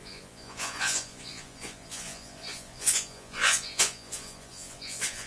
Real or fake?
fake